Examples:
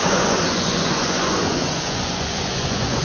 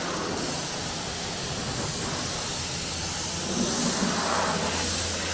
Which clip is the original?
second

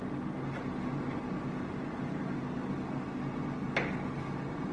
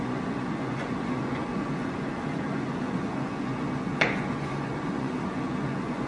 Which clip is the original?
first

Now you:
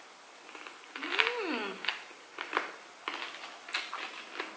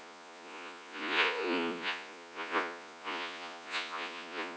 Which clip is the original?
first